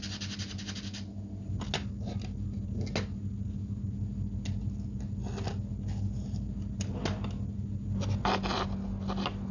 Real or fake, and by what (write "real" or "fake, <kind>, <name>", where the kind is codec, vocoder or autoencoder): real